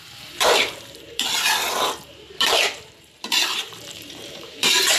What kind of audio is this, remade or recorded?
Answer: remade